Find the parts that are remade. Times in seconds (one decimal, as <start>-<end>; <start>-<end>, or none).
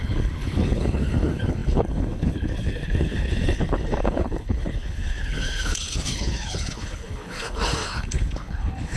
0.0-9.0